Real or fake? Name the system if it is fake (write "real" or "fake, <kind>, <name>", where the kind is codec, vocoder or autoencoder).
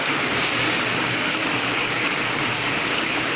fake, codec, DAC